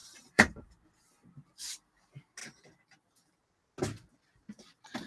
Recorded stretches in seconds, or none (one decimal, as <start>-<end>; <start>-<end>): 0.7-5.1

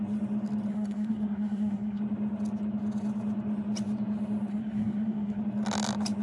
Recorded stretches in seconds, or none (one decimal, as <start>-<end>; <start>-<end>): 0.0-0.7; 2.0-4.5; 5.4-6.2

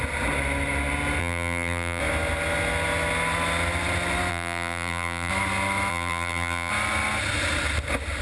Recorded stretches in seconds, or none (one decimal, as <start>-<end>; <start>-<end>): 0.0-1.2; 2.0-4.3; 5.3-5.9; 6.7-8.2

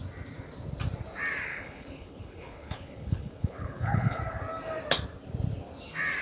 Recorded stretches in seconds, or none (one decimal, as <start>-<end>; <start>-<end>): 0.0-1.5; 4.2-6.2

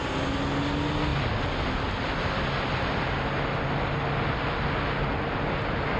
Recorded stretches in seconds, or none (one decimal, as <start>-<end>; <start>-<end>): 0.0-6.0

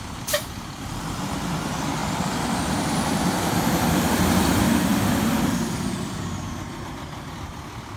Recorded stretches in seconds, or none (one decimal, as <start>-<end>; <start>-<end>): none

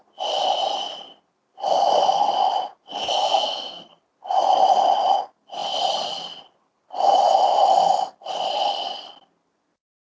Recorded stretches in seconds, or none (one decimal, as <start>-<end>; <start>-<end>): 0.0-3.2; 4.0-10.2

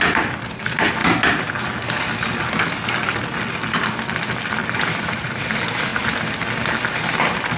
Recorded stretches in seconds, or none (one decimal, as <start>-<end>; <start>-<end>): 0.0-4.6; 5.4-7.6